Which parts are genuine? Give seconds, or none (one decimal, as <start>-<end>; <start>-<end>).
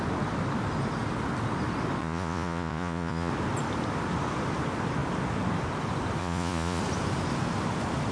0.0-2.0; 3.3-6.2; 6.8-8.1